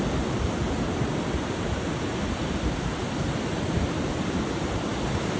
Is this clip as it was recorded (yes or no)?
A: yes